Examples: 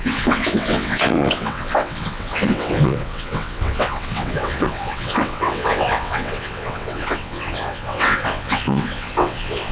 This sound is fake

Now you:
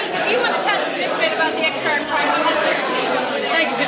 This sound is fake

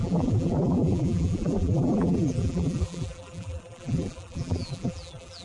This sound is fake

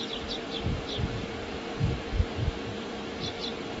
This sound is real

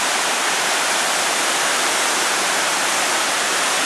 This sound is fake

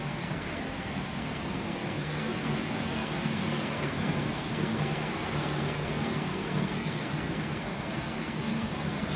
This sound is fake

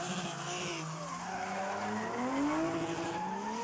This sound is real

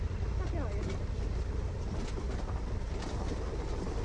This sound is real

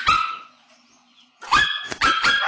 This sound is fake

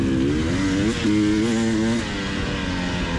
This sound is real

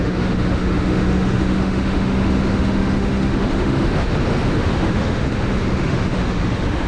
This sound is fake